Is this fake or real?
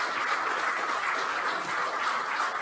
real